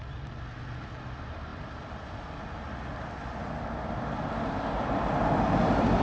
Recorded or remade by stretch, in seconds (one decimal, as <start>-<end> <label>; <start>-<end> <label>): 0.0-6.0 recorded

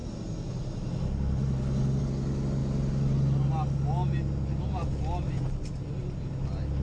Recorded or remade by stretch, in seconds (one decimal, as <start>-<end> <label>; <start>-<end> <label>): 0.0-6.8 recorded

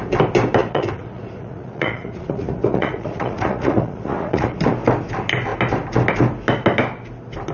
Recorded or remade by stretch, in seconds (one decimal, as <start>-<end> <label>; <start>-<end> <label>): 0.0-0.6 recorded; 0.6-4.6 remade; 4.6-7.5 recorded

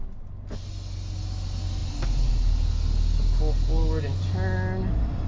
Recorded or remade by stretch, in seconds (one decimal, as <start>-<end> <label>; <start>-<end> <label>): 0.0-5.3 recorded

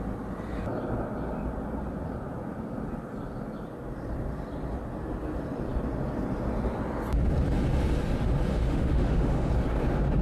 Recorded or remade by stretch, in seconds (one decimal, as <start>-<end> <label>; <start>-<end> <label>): 0.0-8.5 recorded; 8.5-9.5 remade; 9.5-10.2 recorded